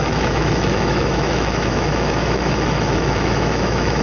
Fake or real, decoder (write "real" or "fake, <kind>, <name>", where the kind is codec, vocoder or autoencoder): fake, autoencoder, DAC-VAE